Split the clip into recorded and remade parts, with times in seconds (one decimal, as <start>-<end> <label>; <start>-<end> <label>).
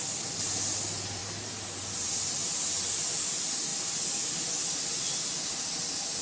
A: 0.0-6.2 recorded